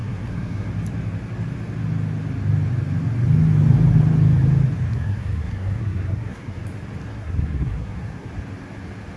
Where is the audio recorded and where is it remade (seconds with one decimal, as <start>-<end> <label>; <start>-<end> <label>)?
0.0-0.7 remade; 0.7-4.9 recorded; 4.9-6.6 remade; 6.6-7.1 recorded; 7.1-8.3 remade; 8.3-9.2 recorded